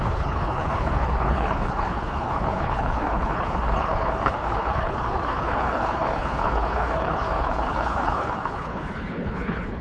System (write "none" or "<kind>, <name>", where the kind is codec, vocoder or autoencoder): codec, HILCodec